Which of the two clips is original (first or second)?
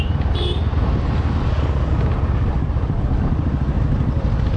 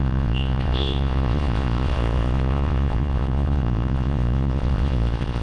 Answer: first